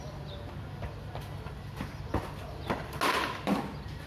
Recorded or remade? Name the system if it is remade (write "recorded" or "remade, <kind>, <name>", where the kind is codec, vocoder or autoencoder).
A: recorded